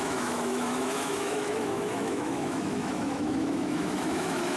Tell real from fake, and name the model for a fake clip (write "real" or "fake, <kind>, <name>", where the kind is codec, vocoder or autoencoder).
fake, autoencoder, DAC-VAE